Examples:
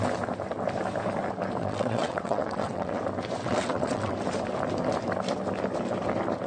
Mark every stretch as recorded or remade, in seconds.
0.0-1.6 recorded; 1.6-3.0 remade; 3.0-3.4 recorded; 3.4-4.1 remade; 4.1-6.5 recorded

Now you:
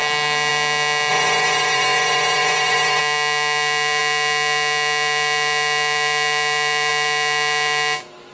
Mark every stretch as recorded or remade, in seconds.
0.0-1.1 recorded; 1.1-3.0 remade; 3.0-8.3 recorded